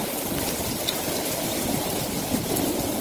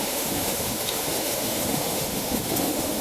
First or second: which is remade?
second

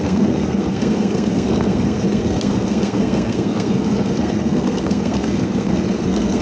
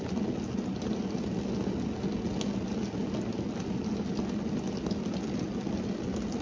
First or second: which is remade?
first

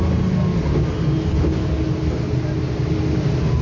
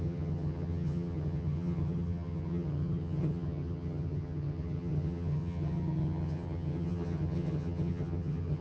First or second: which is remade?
second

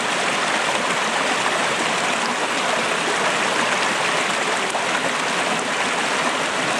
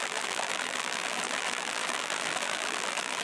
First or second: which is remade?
second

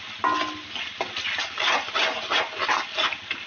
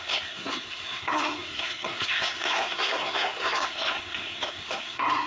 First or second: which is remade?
second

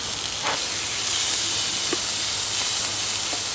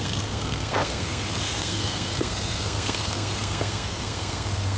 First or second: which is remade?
second